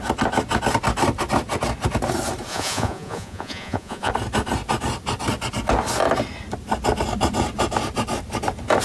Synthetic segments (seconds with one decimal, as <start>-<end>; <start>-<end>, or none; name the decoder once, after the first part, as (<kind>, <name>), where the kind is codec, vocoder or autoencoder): 2.5-4.1 (vocoder, Vocos)